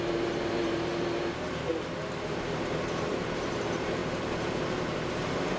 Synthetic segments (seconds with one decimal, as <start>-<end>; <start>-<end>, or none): 0.0-0.9; 3.1-4.0